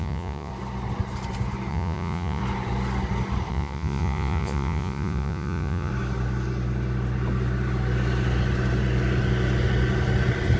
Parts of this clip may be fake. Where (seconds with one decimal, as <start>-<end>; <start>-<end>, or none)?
0.0-0.5; 1.7-2.4; 3.5-5.9